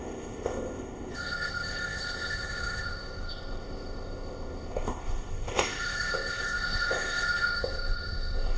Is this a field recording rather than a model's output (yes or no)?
no